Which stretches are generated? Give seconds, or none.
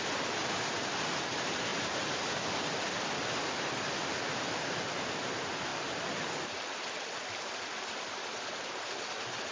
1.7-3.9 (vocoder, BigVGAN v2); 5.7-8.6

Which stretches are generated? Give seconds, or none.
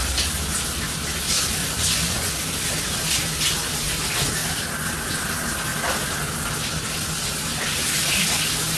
1.6-2.3 (vocoder, Vocos)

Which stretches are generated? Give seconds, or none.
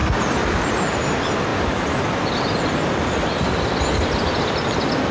none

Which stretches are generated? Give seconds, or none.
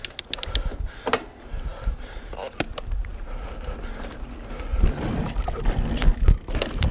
none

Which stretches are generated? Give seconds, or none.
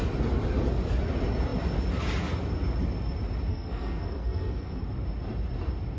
3.5-4.8 (codec, SNAC)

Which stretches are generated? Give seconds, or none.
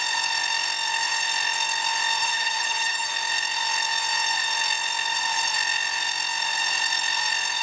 2.2-3.1 (vocoder, HiFi-GAN)